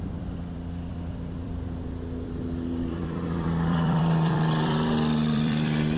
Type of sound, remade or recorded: remade